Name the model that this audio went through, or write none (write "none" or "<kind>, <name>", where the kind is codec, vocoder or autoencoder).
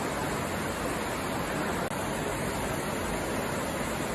none